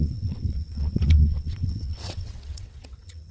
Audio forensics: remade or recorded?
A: remade